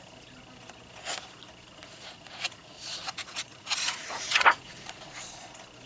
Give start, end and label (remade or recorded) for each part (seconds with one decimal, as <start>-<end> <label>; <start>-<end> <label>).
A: 0.0-1.7 recorded; 1.7-5.2 remade; 5.2-5.9 recorded

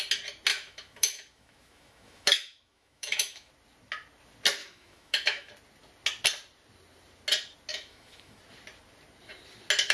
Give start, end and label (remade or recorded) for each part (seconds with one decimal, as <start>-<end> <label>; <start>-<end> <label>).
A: 0.0-0.5 recorded; 0.5-3.5 remade; 3.5-4.6 recorded; 4.6-5.5 remade; 5.5-7.7 recorded; 7.7-8.4 remade; 8.4-9.9 recorded

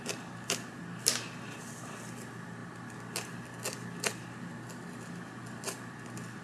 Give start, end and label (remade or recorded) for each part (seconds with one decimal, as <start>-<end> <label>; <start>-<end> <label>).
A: 0.0-6.4 recorded

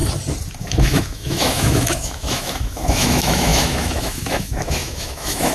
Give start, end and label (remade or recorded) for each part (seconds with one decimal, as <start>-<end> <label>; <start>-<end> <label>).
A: 0.0-0.6 recorded; 0.6-5.5 remade

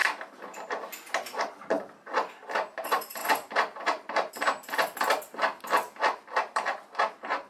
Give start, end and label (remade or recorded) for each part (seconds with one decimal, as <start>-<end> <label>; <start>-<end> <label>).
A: 0.0-7.5 recorded

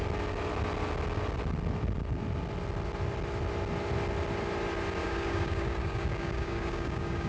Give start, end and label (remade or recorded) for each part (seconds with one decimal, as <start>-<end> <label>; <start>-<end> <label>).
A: 0.0-5.0 recorded; 5.0-7.3 remade

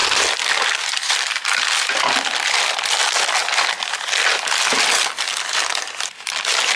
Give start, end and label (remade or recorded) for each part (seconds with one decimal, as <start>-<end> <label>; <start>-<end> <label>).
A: 0.0-6.8 recorded

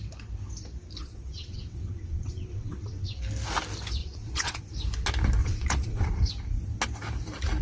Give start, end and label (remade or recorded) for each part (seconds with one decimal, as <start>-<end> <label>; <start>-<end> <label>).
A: 0.0-1.0 recorded; 1.0-3.2 remade; 3.2-4.0 recorded; 4.0-4.6 remade; 4.6-5.4 recorded; 5.4-6.1 remade; 6.1-7.6 recorded